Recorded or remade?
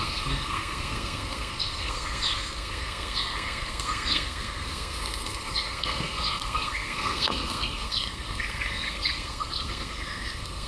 remade